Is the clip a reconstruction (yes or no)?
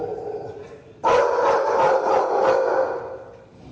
no